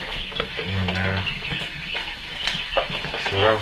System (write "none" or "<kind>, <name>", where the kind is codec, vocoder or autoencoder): codec, SNAC